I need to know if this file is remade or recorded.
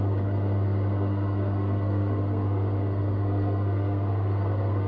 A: remade